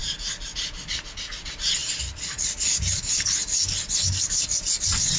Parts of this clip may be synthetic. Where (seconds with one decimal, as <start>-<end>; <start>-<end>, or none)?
none